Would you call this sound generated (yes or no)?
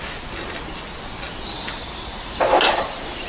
no